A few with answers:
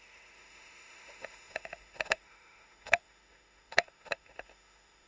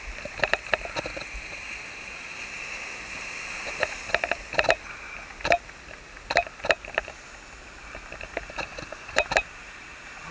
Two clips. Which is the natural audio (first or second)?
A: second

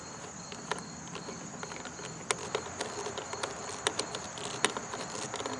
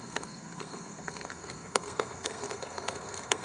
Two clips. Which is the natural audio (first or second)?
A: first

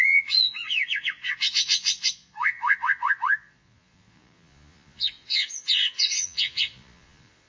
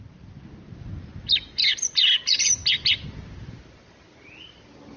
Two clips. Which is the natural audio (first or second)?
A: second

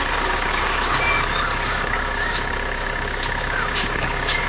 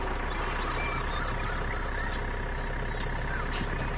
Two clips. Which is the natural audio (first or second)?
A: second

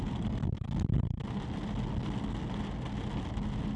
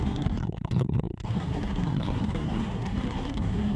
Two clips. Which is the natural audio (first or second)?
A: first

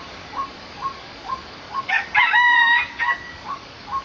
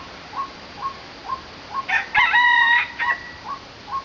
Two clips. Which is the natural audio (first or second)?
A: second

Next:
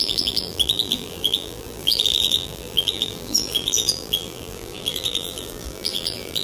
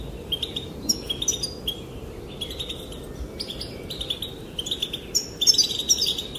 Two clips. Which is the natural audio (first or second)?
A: second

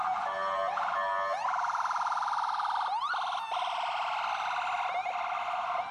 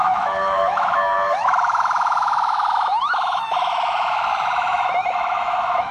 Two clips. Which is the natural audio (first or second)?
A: first